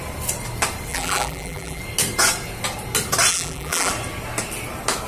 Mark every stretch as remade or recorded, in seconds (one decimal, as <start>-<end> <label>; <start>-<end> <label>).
0.0-0.9 recorded; 0.9-1.8 remade; 1.8-3.3 recorded; 3.3-3.9 remade; 3.9-5.1 recorded